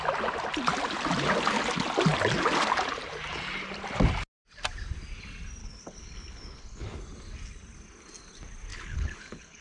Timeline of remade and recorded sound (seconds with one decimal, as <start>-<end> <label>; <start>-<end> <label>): 0.0-5.6 recorded; 5.6-7.0 remade; 7.0-8.7 recorded; 8.7-9.6 remade